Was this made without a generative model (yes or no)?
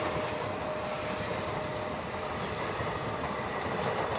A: yes